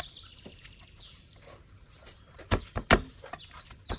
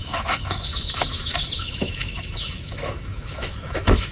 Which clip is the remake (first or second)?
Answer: second